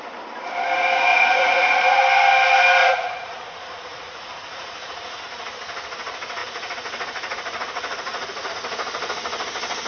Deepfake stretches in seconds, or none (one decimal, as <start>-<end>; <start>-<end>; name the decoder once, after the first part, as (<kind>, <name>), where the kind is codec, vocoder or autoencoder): 1.1-2.0 (vocoder, Vocos); 2.8-5.2; 6.4-8.5